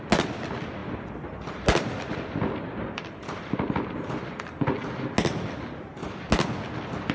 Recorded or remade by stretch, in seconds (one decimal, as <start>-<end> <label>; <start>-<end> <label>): 0.0-7.1 recorded

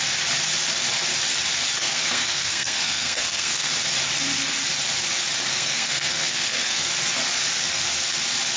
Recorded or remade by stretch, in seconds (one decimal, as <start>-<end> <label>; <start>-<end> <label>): 0.0-1.8 recorded; 1.8-3.7 remade; 3.7-5.5 recorded; 5.5-6.9 remade; 6.9-8.6 recorded

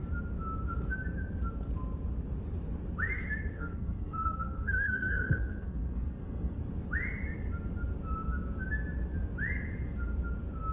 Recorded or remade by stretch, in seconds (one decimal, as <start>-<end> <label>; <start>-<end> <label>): 0.0-3.5 recorded; 3.5-6.6 remade; 6.6-10.7 recorded

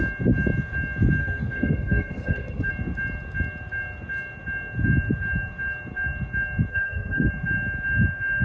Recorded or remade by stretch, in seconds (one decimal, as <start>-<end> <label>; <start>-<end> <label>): 0.0-1.2 recorded; 1.2-2.7 remade; 2.7-6.7 recorded; 6.7-7.3 remade; 7.3-8.4 recorded

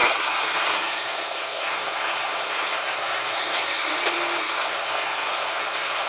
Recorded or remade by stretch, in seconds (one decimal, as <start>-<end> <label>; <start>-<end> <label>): 0.0-3.9 remade; 3.9-4.4 recorded; 4.4-6.1 remade

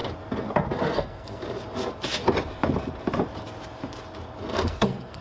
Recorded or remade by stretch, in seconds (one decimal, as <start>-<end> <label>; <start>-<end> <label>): 0.0-0.8 recorded; 0.8-1.4 remade; 1.4-4.5 recorded; 4.5-5.2 remade

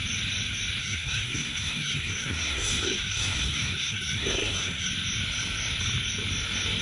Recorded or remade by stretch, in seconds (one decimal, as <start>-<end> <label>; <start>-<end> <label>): 0.0-0.8 recorded; 0.8-4.9 remade; 4.9-6.8 recorded

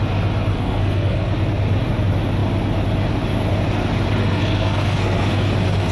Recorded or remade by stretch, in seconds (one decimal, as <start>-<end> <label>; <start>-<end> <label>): 0.0-0.5 recorded; 0.5-1.3 remade; 1.3-4.2 recorded; 4.2-5.9 remade